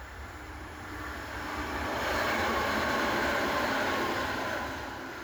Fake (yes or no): no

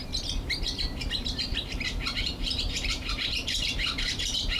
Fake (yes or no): yes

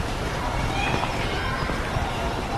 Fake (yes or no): no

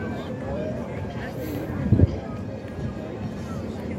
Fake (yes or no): no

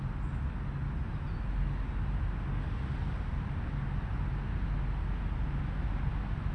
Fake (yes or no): no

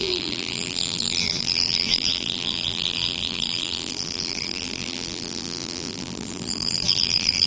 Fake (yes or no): yes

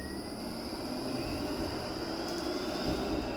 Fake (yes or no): no